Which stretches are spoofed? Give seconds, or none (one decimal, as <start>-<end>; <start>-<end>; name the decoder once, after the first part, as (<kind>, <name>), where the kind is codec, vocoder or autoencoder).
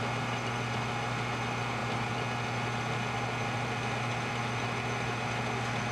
none